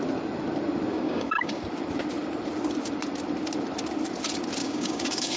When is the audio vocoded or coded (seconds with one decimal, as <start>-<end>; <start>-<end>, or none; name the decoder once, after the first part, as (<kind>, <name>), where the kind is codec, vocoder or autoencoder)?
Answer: 0.9-1.6 (codec, DAC); 4.6-5.4